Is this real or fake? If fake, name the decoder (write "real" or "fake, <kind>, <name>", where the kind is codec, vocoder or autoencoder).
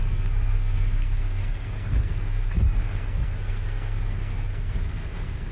fake, codec, SNAC